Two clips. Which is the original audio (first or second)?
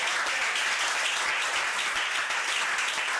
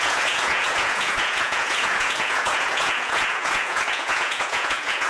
first